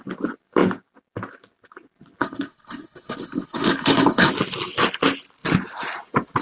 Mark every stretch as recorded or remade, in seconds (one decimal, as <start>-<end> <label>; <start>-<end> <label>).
0.0-2.2 recorded; 2.2-4.3 remade; 4.3-6.4 recorded

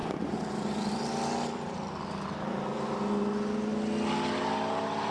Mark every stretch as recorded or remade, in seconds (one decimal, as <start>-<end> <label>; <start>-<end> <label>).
0.0-5.1 recorded

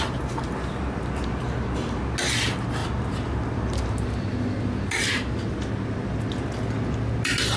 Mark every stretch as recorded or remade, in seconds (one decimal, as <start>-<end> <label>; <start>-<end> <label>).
0.0-7.6 recorded

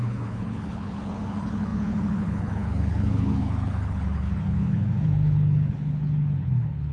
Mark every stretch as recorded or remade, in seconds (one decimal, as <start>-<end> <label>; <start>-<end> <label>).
0.0-6.9 remade

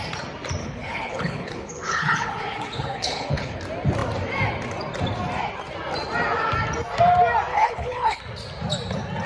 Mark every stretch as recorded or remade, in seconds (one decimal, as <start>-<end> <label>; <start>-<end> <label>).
0.0-0.6 recorded; 0.6-3.6 remade; 3.6-7.5 recorded; 7.5-8.2 remade; 8.2-9.3 recorded

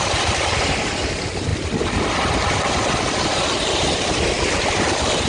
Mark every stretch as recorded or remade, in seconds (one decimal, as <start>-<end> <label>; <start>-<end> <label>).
0.0-5.3 recorded

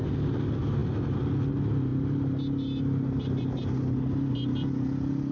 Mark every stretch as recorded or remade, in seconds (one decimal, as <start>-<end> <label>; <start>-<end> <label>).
0.0-5.3 recorded